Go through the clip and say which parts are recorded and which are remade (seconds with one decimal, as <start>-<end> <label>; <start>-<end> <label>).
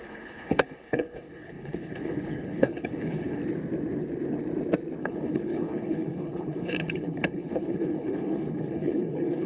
0.0-3.4 remade; 3.4-5.0 recorded; 5.0-9.5 remade